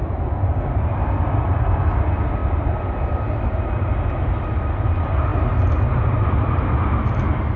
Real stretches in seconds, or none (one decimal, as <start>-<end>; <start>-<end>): 0.0-7.6